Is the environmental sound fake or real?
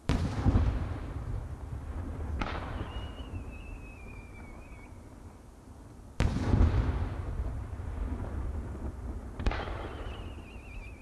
fake